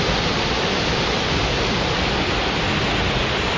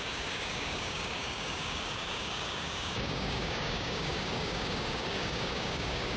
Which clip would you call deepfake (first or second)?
second